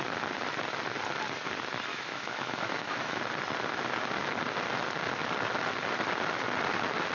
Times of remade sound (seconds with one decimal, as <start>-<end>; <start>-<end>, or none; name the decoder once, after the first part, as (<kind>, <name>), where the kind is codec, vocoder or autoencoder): 1.9-3.2 (autoencoder, DAC-VAE)